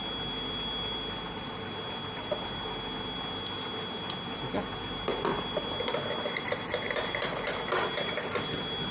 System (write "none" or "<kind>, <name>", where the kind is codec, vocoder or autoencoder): none